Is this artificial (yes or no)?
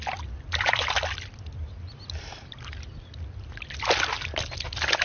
no